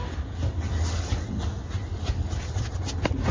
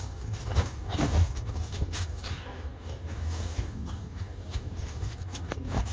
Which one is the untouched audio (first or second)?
first